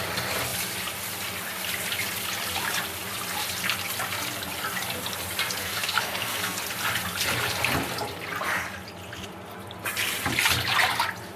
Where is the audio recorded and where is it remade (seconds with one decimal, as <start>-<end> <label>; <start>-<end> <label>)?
0.0-5.6 recorded; 5.6-6.6 remade; 6.6-11.4 recorded